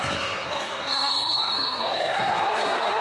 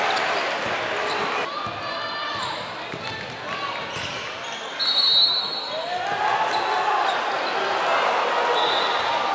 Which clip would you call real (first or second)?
second